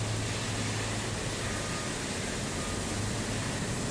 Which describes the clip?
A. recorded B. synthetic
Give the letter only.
A